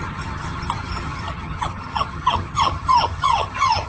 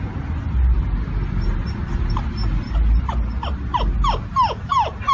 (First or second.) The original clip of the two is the second